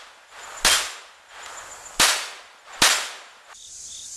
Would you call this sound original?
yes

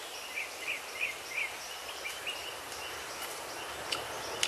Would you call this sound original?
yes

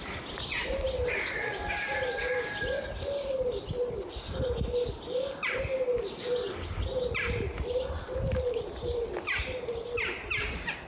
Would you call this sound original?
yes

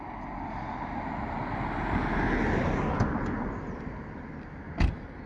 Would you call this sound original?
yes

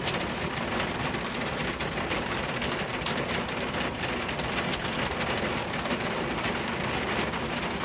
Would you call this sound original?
yes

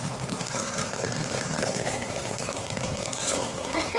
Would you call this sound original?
no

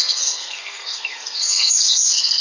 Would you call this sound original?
no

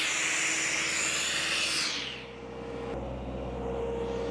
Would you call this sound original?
yes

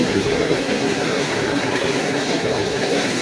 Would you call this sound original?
no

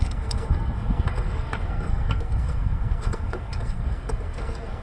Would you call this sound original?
no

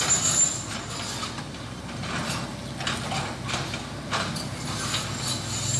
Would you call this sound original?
yes